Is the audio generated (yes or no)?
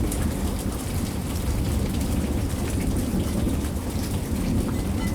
yes